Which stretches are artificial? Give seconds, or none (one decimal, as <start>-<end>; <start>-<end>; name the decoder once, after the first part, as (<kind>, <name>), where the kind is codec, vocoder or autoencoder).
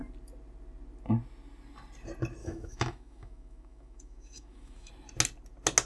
2.4-4.9 (autoencoder, DAC-VAE)